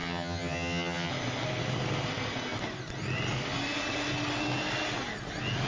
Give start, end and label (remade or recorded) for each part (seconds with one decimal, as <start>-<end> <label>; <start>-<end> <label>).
0.0-1.1 remade; 1.1-5.7 recorded